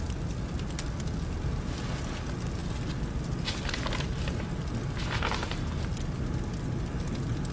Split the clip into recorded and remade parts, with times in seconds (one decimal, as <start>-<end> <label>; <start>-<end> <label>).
0.0-7.5 recorded